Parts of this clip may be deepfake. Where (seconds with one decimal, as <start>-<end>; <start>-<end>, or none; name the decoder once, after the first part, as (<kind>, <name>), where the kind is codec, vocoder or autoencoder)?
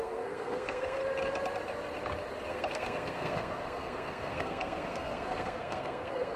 0.0-1.0 (codec, SNAC); 2.5-6.4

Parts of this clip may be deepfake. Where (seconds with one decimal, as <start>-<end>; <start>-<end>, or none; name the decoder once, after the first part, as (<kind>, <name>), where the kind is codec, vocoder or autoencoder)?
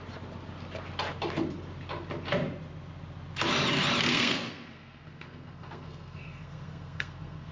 4.1-7.5 (codec, SNAC)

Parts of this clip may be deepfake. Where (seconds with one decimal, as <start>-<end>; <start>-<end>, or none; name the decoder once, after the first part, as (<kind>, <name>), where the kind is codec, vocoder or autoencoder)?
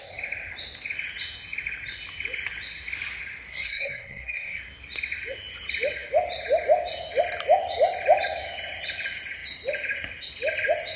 3.5-4.6 (codec, SNAC)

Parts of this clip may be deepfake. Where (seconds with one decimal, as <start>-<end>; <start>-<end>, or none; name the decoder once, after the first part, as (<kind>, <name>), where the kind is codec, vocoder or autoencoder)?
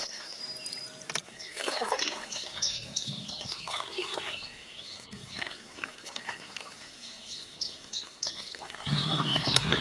0.0-0.4 (codec, SNAC); 1.2-9.8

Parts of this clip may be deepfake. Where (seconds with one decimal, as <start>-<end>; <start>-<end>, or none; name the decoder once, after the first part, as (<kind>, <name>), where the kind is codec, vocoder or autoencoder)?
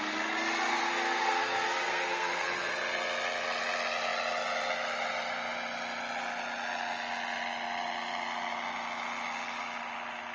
0.7-2.7 (codec, SNAC)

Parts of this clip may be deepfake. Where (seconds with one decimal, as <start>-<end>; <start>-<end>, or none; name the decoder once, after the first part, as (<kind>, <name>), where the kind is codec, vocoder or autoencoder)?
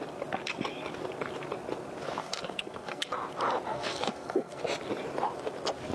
2.2-3.1 (codec, SNAC); 3.7-4.6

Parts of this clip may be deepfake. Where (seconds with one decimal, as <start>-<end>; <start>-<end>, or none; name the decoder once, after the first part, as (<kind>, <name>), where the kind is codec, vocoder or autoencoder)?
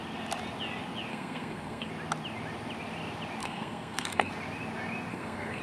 1.1-1.9 (codec, SNAC); 3.4-4.3; 5.1-5.6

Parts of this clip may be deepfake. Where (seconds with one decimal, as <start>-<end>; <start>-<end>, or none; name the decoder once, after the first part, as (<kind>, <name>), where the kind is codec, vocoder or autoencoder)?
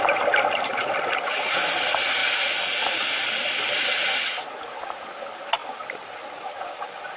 none